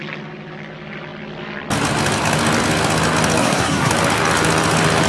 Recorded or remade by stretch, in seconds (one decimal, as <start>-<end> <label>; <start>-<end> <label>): 0.0-3.4 recorded; 3.4-3.9 remade; 3.9-5.1 recorded